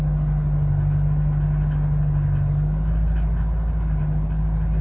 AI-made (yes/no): no